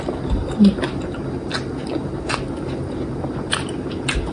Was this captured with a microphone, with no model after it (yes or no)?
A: yes